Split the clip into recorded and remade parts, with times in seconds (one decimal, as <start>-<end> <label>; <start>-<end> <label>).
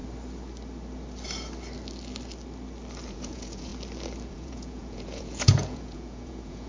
0.0-3.1 recorded; 3.1-3.7 remade; 3.7-4.3 recorded; 4.3-6.7 remade